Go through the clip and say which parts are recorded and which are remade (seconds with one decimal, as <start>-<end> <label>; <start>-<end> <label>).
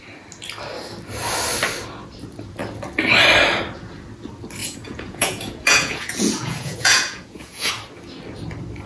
0.0-4.6 recorded; 4.6-7.7 remade; 7.7-8.9 recorded